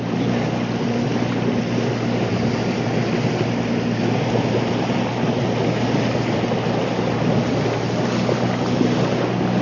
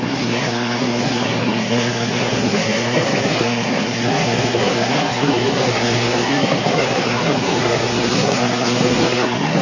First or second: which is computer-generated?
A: second